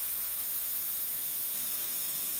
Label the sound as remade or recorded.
remade